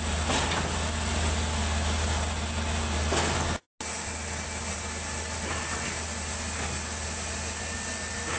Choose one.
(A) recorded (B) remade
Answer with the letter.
A